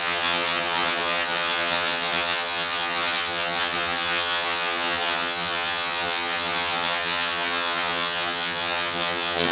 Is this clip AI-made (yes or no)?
yes